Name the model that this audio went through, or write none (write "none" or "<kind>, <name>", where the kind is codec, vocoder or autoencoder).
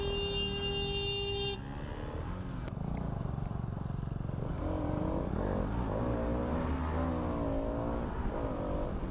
none